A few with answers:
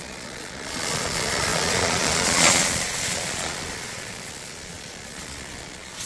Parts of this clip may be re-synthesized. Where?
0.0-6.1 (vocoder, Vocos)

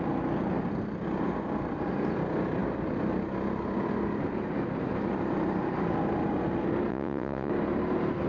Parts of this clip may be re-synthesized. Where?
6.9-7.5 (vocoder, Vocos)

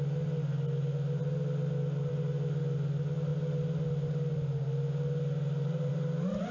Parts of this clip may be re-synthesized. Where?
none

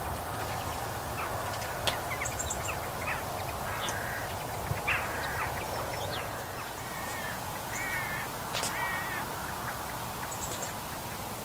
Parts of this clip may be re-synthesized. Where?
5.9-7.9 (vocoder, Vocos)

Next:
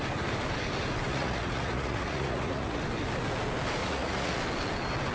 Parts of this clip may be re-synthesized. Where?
1.1-2.8 (vocoder, Vocos); 3.8-4.4

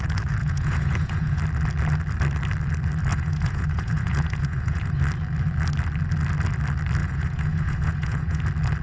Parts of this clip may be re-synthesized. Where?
0.4-1.4 (vocoder, Vocos); 3.1-5.0; 7.0-8.4

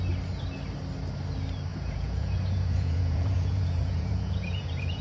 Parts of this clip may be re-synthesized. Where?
1.7-5.0 (vocoder, Vocos)

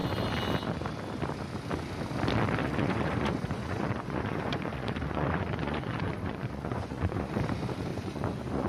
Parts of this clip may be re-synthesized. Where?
2.6-7.4 (vocoder, Vocos); 7.9-8.7